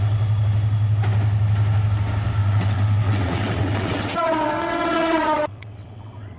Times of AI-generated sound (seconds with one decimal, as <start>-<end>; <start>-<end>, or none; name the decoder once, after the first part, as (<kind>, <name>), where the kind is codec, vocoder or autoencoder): 2.4-6.4 (vocoder, WaveNeXt)